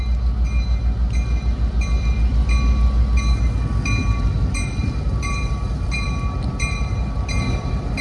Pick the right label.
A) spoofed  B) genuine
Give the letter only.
B